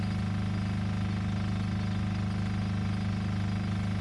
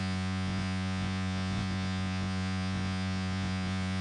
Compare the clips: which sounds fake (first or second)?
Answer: second